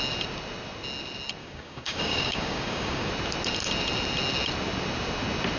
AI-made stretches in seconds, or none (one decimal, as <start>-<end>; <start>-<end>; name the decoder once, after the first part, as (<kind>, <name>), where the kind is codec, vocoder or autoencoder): 1.4-3.1 (codec, DAC)